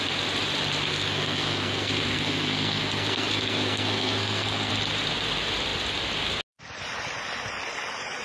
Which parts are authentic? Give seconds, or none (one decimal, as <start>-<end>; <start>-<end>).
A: 0.0-0.9; 4.7-8.2